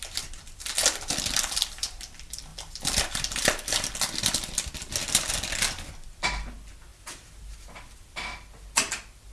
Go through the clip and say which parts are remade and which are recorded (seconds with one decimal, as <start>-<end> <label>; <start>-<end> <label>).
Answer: 0.0-2.5 recorded; 2.5-3.9 remade; 3.9-6.9 recorded; 6.9-8.1 remade; 8.1-9.3 recorded

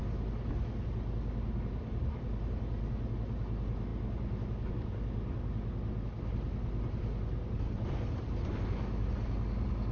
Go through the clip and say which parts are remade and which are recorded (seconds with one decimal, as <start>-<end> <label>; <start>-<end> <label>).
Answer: 0.0-9.9 recorded

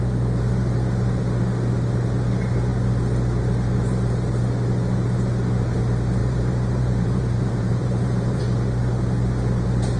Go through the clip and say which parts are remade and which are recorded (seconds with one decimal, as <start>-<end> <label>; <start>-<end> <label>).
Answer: 0.0-6.2 recorded; 6.2-8.4 remade; 8.4-10.0 recorded

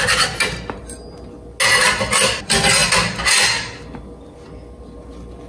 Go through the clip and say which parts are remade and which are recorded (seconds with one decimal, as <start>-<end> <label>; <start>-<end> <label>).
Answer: 0.0-5.5 recorded

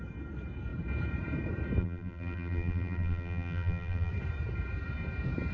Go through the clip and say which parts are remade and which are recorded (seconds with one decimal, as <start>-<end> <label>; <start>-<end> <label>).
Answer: 0.0-1.8 recorded; 1.8-4.1 remade; 4.1-5.5 recorded

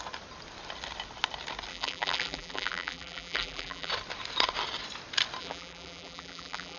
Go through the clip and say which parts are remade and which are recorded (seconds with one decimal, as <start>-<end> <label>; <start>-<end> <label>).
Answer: 0.0-1.7 recorded; 1.7-3.9 remade; 3.9-5.4 recorded; 5.4-6.8 remade